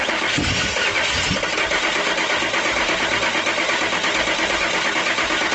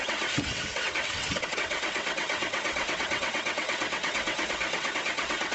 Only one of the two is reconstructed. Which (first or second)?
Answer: second